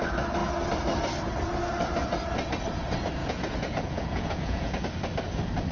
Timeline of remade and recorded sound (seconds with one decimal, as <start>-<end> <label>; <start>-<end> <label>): 0.0-3.2 recorded; 3.2-4.8 remade; 4.8-5.7 recorded